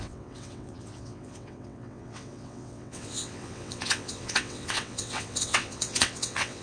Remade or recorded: remade